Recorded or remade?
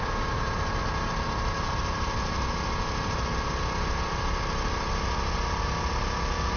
recorded